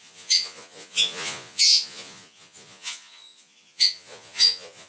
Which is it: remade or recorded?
remade